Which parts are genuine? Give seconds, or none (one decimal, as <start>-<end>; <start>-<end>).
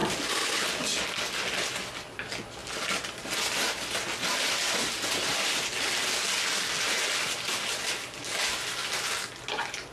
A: 0.0-9.9